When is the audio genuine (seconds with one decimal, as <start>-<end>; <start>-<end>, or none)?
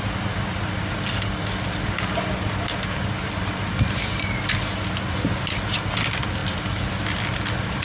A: 0.0-7.8